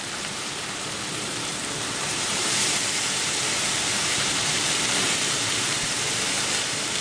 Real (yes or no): no